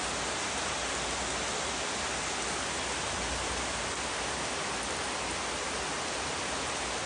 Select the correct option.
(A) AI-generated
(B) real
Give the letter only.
B